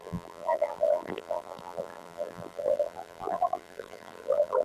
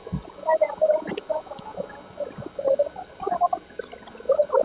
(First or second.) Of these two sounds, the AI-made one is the first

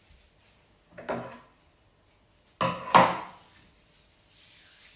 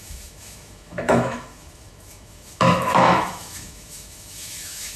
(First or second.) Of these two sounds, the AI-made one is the second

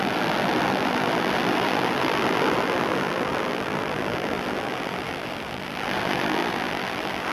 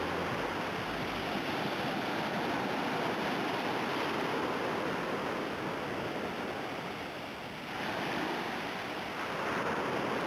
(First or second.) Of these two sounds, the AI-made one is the first